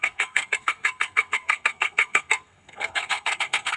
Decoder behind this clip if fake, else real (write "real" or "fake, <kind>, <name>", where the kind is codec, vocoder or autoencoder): fake, codec, SNAC